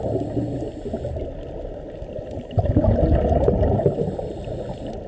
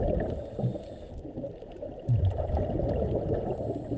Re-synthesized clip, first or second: second